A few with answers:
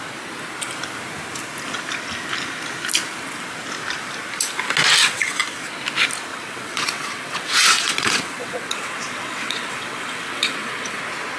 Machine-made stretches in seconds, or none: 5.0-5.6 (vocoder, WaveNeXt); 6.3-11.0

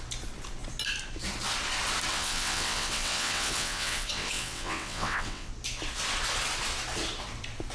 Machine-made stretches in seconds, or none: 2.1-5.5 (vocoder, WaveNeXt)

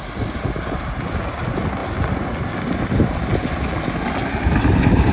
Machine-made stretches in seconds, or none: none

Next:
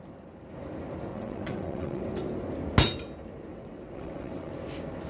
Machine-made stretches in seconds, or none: 1.1-2.0 (vocoder, WaveNeXt); 3.5-4.5

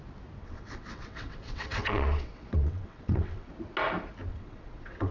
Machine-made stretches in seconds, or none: 0.4-3.5 (vocoder, WaveNeXt); 4.3-5.1